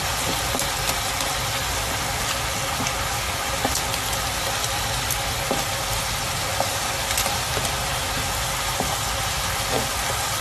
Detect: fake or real real